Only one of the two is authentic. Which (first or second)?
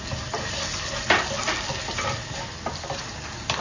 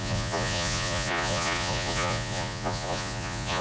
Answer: first